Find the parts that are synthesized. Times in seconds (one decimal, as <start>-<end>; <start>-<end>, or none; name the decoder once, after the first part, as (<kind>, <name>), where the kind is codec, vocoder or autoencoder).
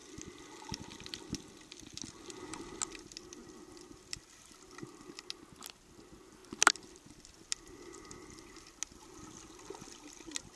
6.4-7.5 (vocoder, BigVGAN v2)